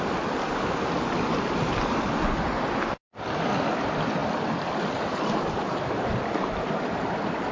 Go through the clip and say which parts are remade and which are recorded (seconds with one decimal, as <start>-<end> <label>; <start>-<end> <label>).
0.0-7.5 recorded